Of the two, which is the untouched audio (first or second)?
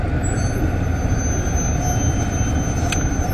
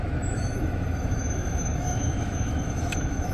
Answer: first